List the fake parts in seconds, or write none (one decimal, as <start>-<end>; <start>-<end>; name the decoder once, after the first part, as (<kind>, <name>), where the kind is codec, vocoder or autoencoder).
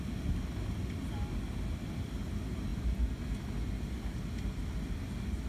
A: none